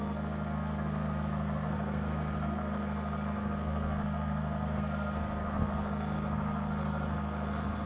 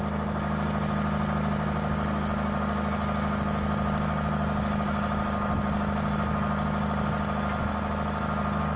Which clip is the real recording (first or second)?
second